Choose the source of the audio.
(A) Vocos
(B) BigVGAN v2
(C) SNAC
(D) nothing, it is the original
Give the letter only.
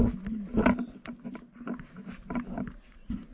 D